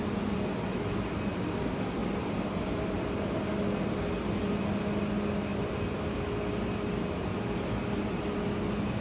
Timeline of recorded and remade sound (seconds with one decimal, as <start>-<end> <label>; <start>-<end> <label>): 0.0-9.0 recorded